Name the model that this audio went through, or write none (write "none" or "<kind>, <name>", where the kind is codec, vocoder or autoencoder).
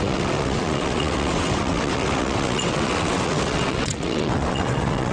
vocoder, WaveNeXt